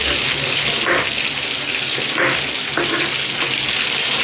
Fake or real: real